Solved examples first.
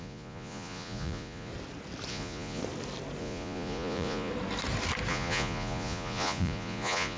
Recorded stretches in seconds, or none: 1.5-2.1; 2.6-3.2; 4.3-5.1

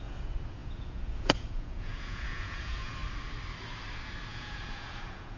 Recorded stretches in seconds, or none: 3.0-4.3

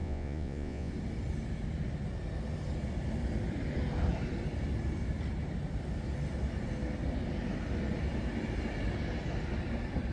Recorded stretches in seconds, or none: 0.9-10.1

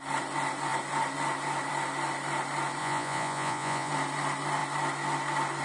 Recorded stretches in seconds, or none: 0.0-2.8; 3.9-5.6

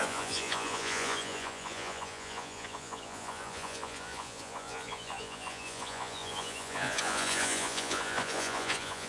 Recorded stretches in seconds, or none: none

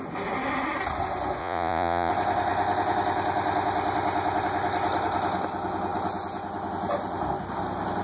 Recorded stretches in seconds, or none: 0.0-1.4; 2.1-8.0